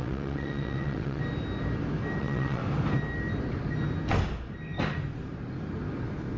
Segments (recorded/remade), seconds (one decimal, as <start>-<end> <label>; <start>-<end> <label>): 0.0-1.2 remade; 1.2-2.2 recorded; 2.2-2.6 remade; 2.6-6.4 recorded